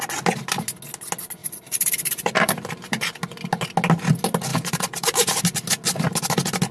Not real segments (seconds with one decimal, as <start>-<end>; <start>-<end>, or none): 1.4-3.0; 4.5-5.4